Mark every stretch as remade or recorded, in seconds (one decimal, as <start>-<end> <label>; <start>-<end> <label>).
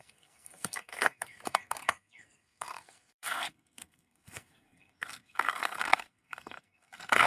0.0-7.3 remade